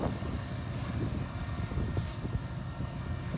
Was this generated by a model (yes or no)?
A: no